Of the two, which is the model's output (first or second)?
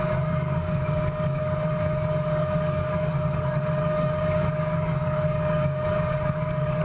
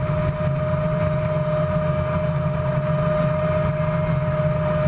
first